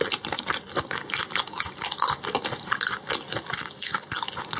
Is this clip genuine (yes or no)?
yes